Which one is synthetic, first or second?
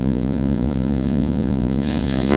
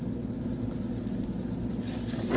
first